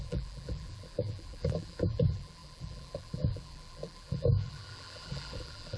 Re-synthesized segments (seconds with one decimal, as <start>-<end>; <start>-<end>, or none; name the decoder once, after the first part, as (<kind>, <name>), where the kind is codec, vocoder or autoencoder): 0.0-5.8 (vocoder, BigVGAN v2)